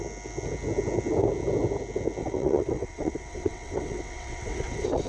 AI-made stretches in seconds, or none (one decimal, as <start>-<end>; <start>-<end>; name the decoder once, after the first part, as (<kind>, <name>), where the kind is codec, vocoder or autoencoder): 2.2-5.1 (vocoder, WaveNeXt)